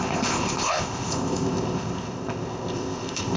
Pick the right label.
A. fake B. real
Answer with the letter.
A